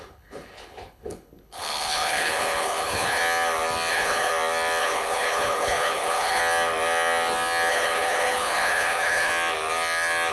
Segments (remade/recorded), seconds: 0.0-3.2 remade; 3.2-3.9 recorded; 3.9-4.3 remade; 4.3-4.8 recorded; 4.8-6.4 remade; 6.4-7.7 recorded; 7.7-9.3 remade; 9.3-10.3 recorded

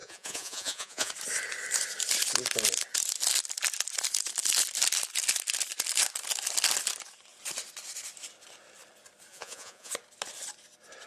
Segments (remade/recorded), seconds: 0.0-1.1 remade; 1.1-9.3 recorded; 9.3-9.9 remade; 9.9-11.1 recorded